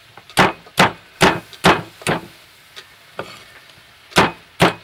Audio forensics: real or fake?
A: real